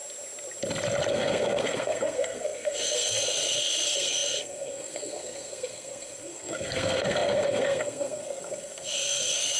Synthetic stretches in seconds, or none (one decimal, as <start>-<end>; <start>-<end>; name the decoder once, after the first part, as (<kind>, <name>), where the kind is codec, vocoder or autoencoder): 1.1-9.6 (codec, SNAC)